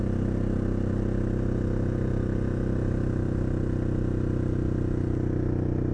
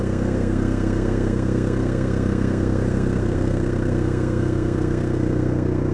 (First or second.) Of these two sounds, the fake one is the second